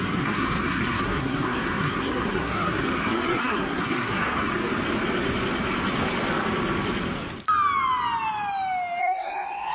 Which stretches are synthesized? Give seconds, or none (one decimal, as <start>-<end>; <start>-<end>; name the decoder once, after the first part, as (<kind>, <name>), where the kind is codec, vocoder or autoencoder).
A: 0.0-4.5 (codec, SNAC); 9.0-9.7